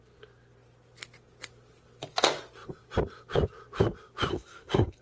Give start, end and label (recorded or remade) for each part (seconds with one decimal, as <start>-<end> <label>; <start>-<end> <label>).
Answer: 0.0-4.3 recorded; 4.3-5.0 remade